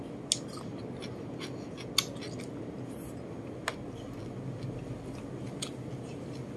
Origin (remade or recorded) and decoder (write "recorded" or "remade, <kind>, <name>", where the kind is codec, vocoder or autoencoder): recorded